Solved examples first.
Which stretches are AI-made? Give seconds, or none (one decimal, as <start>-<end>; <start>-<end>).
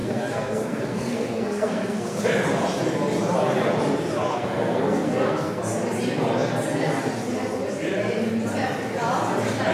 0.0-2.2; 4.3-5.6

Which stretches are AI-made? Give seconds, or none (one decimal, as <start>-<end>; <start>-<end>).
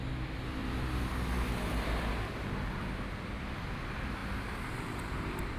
0.6-1.1; 4.2-5.6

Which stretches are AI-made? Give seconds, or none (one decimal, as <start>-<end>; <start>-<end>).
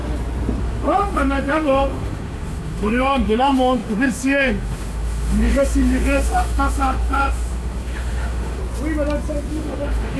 0.6-8.6; 9.5-10.2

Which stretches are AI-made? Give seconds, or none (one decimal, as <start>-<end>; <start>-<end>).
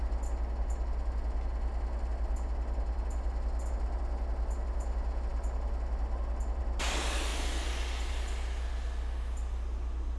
none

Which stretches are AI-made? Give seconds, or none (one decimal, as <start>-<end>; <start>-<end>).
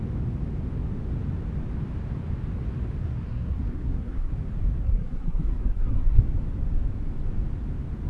3.0-4.3; 4.8-6.2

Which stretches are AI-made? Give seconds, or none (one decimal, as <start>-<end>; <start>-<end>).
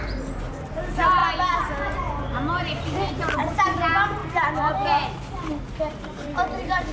none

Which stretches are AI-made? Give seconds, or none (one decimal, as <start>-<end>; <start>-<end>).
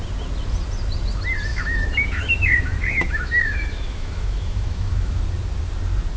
1.5-5.2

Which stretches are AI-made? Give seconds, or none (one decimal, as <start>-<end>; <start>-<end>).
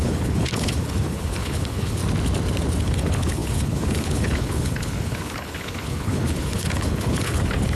0.0-2.0; 2.8-7.8